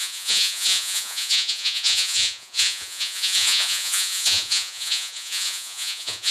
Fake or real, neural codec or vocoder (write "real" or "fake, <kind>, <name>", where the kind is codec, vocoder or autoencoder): fake, vocoder, Vocos